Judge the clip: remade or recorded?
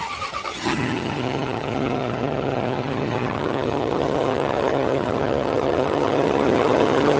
remade